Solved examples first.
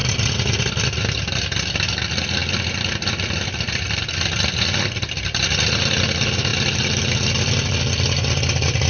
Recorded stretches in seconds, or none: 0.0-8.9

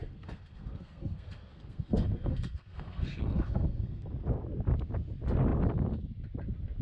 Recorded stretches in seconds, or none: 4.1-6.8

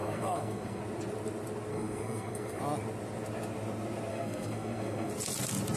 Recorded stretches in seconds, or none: 0.8-1.7; 2.6-4.1; 5.1-5.8